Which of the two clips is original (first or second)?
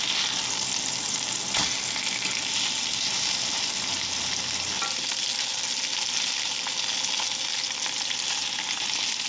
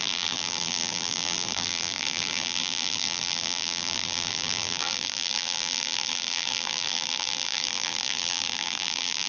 first